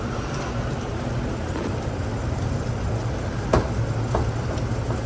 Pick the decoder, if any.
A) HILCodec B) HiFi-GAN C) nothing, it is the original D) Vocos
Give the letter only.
C